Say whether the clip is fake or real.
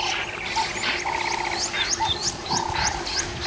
real